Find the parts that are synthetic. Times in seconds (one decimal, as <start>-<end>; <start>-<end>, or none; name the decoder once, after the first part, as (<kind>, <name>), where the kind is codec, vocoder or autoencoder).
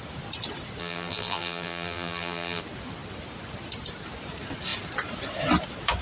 0.8-2.6 (vocoder, BigVGAN v2)